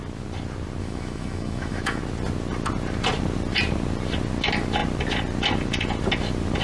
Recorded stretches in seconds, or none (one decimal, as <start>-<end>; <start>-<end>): 0.0-0.8; 2.0-6.6